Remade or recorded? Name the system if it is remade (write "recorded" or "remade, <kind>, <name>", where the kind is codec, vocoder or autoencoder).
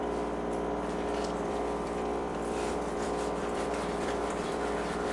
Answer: remade, vocoder, BigVGAN v2